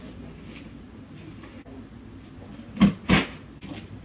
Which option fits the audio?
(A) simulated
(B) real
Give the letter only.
B